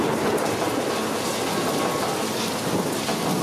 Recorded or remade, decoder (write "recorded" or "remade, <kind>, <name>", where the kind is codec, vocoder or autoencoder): recorded